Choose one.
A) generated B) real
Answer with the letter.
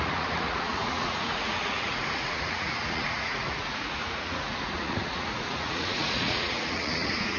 A